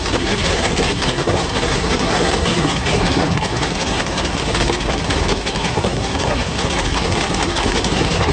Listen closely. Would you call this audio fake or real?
fake